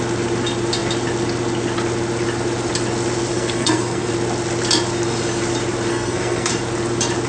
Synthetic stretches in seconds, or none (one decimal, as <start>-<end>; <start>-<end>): 3.3-4.1; 5.9-6.5